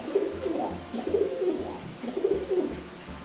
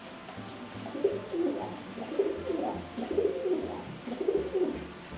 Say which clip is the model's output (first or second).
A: first